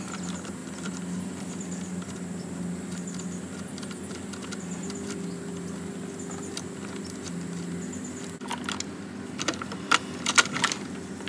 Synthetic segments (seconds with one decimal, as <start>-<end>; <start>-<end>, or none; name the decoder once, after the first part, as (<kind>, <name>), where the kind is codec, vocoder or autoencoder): 0.6-1.5 (vocoder, BigVGAN v2)